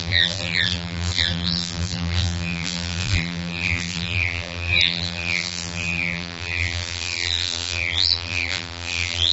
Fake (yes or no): yes